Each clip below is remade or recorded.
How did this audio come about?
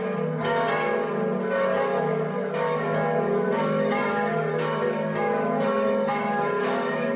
remade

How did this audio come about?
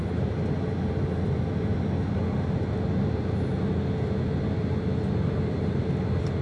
recorded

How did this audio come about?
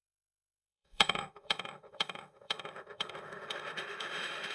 remade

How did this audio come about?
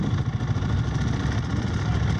recorded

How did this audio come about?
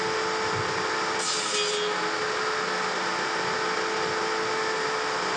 recorded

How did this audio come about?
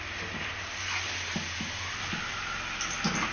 recorded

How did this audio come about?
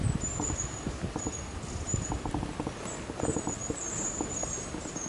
recorded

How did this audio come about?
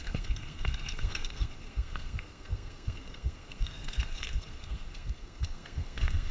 remade